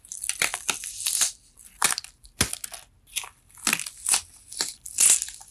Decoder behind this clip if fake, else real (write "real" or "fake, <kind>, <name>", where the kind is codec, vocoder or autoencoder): real